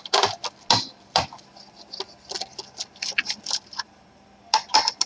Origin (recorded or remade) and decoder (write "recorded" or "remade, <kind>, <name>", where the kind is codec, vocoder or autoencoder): recorded